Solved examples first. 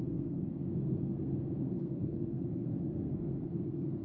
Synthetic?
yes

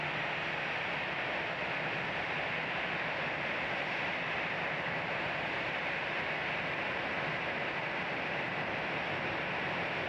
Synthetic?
no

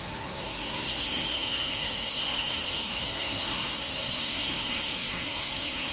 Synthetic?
yes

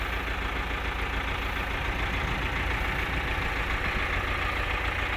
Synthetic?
no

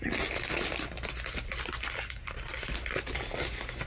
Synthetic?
no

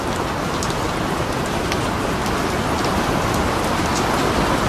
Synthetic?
no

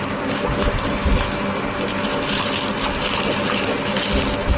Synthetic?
no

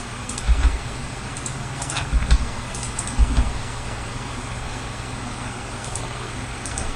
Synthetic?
yes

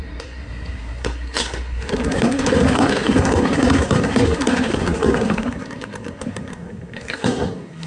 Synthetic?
yes